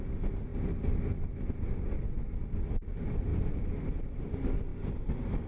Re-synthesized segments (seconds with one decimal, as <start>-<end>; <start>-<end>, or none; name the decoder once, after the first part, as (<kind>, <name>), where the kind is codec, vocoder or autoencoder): 3.3-4.3 (vocoder, BigVGAN v2); 4.7-5.5